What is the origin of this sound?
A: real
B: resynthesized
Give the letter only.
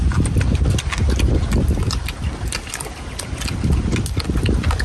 A